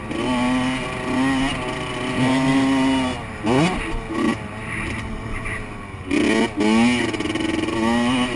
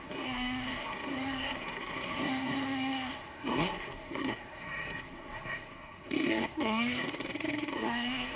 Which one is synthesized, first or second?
second